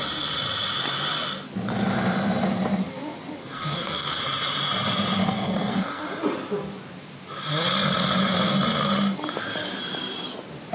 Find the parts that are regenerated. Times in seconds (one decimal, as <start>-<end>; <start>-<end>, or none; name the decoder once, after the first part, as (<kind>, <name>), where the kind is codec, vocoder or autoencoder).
3.4-4.2 (codec, SNAC); 5.2-6.0